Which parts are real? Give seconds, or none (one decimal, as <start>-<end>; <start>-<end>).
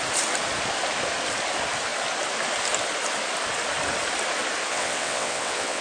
0.0-4.7